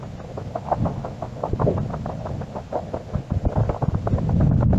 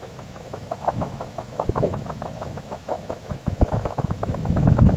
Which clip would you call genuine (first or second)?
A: first